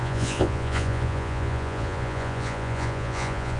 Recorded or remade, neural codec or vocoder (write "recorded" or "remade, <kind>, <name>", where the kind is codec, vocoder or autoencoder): remade, vocoder, Vocos